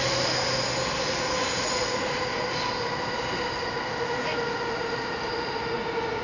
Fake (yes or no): no